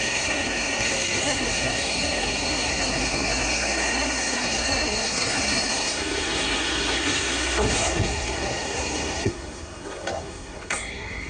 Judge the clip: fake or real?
fake